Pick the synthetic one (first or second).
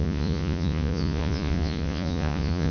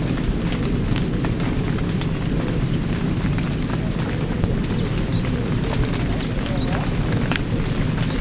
first